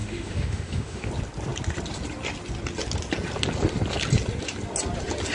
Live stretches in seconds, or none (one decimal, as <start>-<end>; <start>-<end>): 1.1-5.3